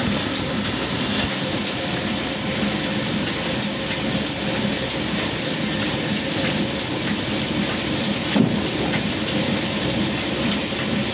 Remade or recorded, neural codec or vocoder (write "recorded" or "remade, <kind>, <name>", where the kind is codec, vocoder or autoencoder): recorded